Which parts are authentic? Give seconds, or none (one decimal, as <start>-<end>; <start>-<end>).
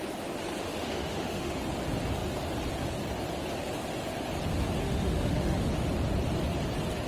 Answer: 0.0-0.6; 1.6-4.8; 5.7-7.1